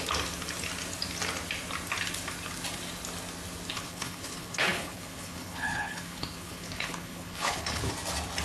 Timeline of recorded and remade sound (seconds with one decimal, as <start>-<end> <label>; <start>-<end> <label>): 0.0-3.7 recorded; 3.7-7.9 remade; 7.9-8.4 recorded